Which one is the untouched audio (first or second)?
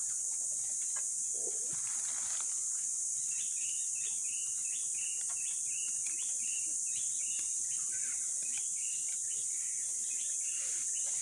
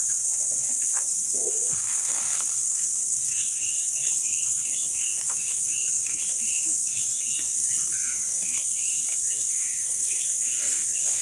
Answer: first